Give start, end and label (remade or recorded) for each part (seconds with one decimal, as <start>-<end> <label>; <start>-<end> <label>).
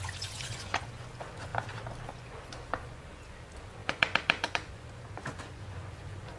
0.0-1.5 remade; 1.5-2.1 recorded; 2.1-6.4 remade